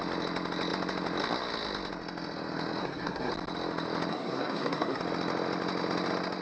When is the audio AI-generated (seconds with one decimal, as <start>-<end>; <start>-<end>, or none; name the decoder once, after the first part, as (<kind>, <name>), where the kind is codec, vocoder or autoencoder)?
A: 2.8-3.3 (codec, SNAC); 4.1-5.0